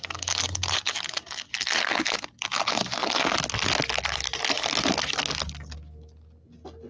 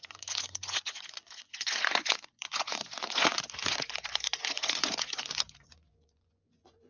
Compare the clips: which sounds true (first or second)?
first